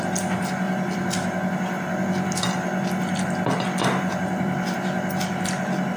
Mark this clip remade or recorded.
recorded